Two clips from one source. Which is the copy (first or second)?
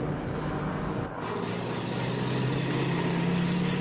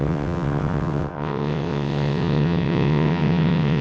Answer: second